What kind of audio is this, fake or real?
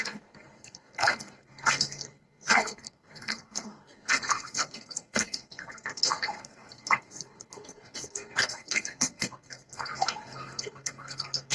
fake